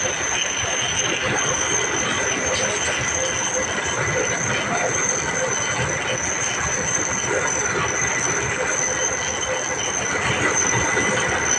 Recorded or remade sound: recorded